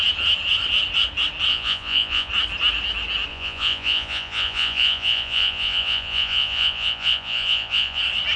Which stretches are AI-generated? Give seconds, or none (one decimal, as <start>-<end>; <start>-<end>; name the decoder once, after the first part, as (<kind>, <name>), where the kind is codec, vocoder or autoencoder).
1.5-2.3 (vocoder, Vocos); 3.3-8.0